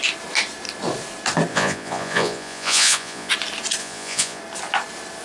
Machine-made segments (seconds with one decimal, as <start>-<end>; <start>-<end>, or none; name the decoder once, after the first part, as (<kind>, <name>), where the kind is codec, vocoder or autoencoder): 1.5-3.3 (vocoder, Vocos); 3.8-4.4